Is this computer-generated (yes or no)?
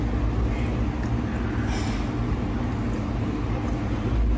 no